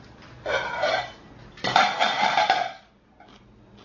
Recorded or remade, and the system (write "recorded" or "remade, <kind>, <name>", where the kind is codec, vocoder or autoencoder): recorded